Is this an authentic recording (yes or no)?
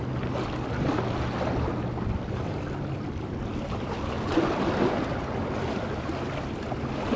yes